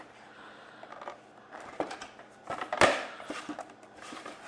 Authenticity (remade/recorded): remade